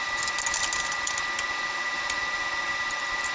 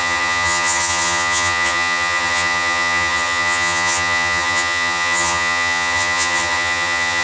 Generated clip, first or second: second